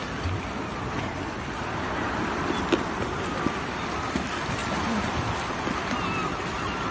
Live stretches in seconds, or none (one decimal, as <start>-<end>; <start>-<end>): 0.0-6.9